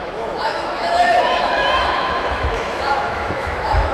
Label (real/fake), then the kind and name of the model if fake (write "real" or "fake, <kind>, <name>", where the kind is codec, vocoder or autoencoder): fake, autoencoder, DAC-VAE